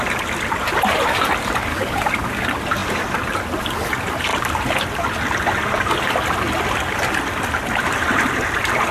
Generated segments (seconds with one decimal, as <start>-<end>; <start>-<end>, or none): 1.7-2.4